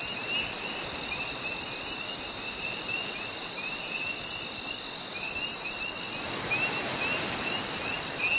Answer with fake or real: real